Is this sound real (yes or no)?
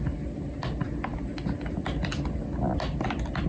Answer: yes